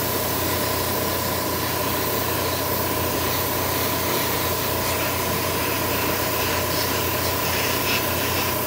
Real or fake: real